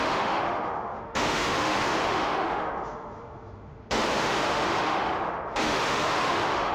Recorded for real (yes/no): no